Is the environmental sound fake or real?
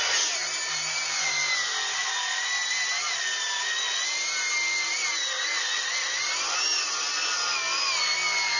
real